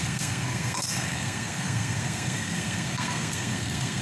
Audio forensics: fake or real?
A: fake